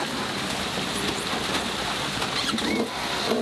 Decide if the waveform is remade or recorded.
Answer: recorded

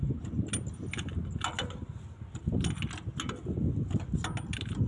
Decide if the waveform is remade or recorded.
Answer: recorded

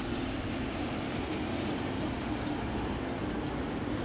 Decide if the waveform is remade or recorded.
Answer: recorded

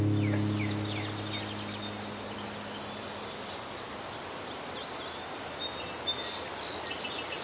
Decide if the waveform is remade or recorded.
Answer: recorded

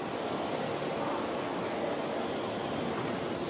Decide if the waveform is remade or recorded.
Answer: recorded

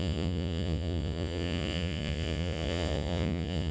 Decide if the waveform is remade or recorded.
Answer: remade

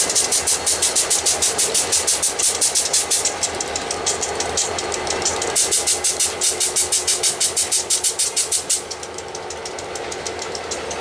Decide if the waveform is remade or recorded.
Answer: recorded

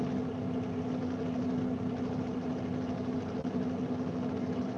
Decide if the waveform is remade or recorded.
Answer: recorded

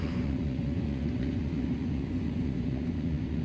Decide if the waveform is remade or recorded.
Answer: remade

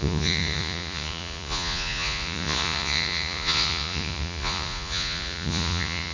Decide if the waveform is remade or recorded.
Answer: remade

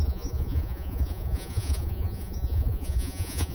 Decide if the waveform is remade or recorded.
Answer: remade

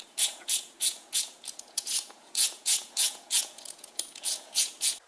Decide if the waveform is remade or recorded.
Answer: remade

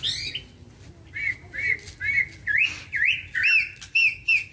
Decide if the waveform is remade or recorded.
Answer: recorded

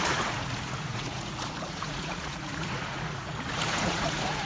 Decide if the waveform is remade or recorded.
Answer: remade